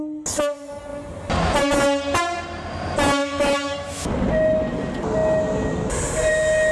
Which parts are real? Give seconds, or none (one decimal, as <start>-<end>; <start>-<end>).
0.0-3.2; 4.1-6.7